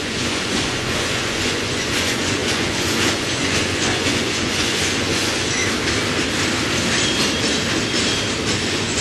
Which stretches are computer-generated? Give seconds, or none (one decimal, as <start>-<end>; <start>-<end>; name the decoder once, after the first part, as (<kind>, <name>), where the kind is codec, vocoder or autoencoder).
0.0-5.6 (vocoder, Vocos); 8.5-9.0